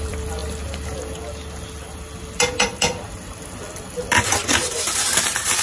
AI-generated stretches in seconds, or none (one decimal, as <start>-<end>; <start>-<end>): 0.0-0.4; 3.8-5.6